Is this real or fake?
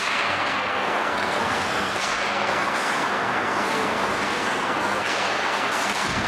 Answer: fake